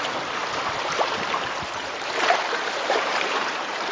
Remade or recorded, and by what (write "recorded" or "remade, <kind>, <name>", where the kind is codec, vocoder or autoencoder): remade, vocoder, BigVGAN v2